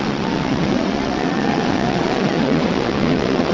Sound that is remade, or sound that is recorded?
remade